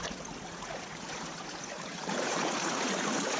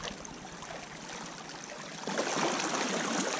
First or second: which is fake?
first